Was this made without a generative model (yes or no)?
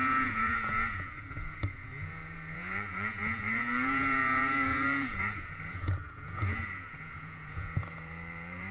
no